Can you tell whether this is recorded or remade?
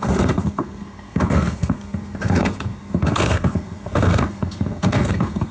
remade